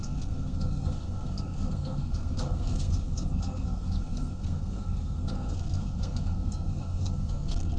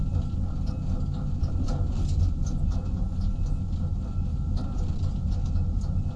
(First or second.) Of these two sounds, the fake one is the first